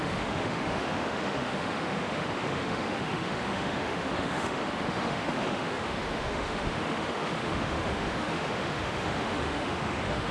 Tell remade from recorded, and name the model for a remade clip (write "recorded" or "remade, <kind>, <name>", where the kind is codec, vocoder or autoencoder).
remade, autoencoder, DAC-VAE